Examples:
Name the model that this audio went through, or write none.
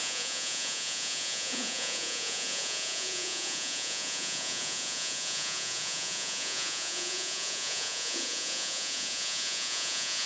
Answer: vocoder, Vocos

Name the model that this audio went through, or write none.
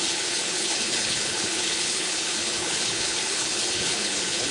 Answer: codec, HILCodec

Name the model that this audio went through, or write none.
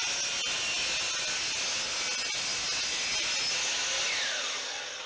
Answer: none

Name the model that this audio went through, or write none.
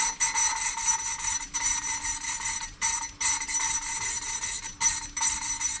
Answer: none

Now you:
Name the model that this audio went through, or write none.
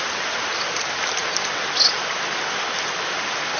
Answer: none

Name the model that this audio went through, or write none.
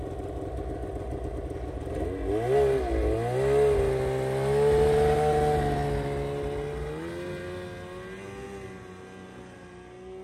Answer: none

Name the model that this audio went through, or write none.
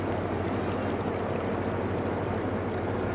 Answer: none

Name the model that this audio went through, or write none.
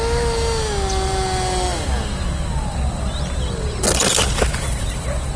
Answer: none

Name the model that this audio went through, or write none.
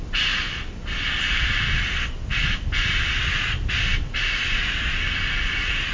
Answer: none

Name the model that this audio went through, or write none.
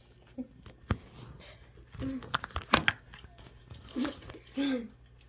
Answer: none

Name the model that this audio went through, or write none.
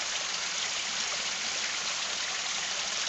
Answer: none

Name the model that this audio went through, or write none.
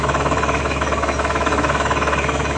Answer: autoencoder, DAC-VAE